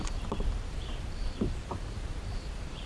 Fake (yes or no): yes